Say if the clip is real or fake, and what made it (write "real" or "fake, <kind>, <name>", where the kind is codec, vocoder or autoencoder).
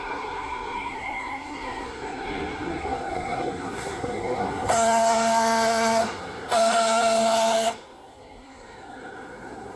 fake, codec, SNAC